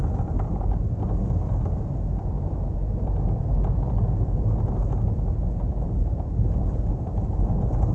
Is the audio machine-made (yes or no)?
no